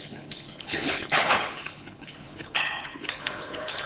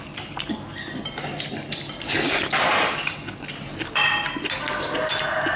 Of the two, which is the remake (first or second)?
first